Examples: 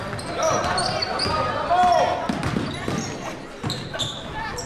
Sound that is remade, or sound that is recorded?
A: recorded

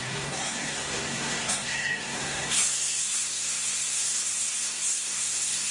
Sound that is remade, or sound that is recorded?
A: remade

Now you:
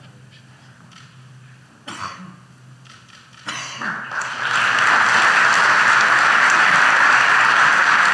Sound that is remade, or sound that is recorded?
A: recorded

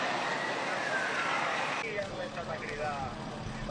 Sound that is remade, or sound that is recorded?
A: recorded